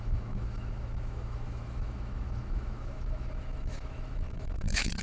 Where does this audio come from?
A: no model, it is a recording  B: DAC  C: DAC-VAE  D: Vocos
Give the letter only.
C